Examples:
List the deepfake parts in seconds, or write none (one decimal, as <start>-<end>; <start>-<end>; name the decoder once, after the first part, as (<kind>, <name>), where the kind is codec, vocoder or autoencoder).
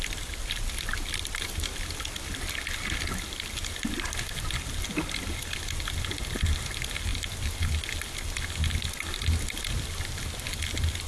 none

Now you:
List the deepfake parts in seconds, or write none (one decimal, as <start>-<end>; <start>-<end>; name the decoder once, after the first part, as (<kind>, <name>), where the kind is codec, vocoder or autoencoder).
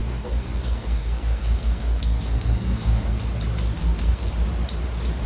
0.0-3.2 (codec, SNAC); 3.8-4.3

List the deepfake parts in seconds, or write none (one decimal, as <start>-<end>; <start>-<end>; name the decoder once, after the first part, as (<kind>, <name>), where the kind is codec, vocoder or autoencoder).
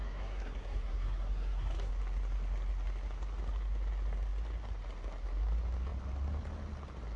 0.0-1.9 (codec, SNAC)